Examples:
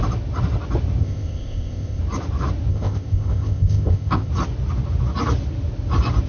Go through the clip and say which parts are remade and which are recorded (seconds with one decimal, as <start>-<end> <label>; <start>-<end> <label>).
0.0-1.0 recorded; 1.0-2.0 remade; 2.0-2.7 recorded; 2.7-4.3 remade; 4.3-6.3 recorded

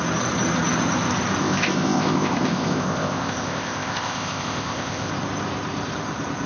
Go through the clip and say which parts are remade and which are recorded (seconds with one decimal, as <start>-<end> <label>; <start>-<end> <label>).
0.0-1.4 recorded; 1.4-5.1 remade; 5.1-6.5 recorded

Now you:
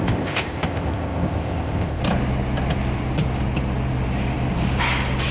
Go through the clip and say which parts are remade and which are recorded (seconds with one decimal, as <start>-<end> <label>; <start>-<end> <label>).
0.0-2.0 remade; 2.0-5.3 recorded